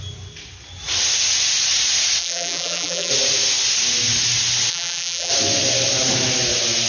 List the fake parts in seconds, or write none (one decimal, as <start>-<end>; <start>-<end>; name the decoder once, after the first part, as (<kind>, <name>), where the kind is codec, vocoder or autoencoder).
2.2-3.1 (vocoder, BigVGAN v2); 4.7-5.3